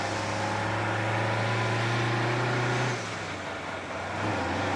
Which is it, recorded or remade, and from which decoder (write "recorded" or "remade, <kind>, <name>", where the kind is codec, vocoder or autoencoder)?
recorded